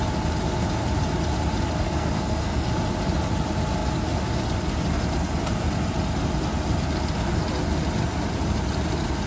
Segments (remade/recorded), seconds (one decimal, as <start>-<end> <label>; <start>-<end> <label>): 0.0-1.8 recorded; 1.8-2.7 remade; 2.7-9.3 recorded